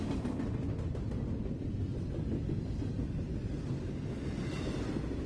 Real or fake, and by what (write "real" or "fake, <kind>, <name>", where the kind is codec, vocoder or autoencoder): real